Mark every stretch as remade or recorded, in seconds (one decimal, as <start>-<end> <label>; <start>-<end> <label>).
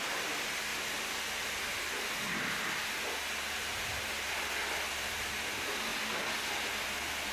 0.0-7.3 recorded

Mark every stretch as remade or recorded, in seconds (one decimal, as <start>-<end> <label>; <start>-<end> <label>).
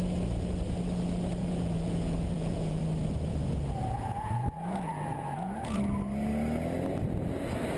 0.0-1.4 recorded; 1.4-2.8 remade; 2.8-3.3 recorded; 3.3-5.8 remade; 5.8-7.8 recorded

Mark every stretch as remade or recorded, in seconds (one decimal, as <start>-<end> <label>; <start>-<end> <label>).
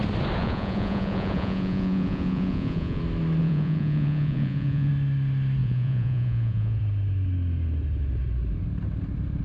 0.0-0.4 recorded; 0.4-3.0 remade; 3.0-3.4 recorded; 3.4-4.9 remade; 4.9-5.6 recorded; 5.6-6.8 remade; 6.8-9.4 recorded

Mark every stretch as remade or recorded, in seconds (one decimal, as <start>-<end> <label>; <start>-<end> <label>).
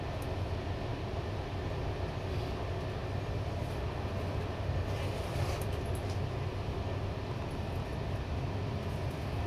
0.0-9.5 recorded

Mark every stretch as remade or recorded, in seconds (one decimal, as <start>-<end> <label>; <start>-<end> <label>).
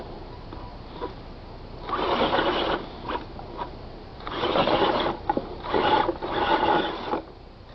0.0-4.1 recorded; 4.1-4.9 remade; 4.9-7.7 recorded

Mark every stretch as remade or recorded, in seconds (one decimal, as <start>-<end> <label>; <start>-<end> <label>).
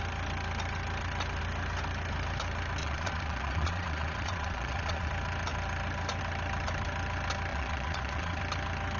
0.0-2.8 recorded; 2.8-5.1 remade; 5.1-7.5 recorded; 7.5-8.4 remade; 8.4-9.0 recorded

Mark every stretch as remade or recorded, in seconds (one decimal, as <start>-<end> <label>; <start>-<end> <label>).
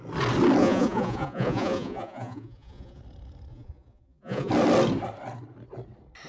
0.0-0.6 recorded; 0.6-3.0 remade; 3.0-3.5 recorded; 3.5-4.5 remade; 4.5-6.3 recorded